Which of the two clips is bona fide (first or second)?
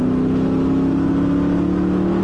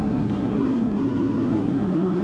first